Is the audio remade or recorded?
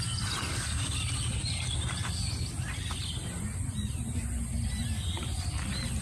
recorded